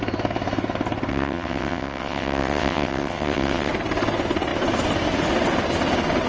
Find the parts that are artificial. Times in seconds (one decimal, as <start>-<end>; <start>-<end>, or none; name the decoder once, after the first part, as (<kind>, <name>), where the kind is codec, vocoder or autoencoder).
1.1-3.7 (vocoder, WaveNeXt)